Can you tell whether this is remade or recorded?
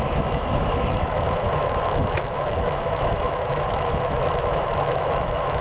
remade